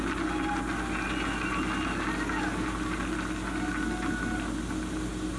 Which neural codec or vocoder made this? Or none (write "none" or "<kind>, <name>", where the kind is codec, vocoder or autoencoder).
none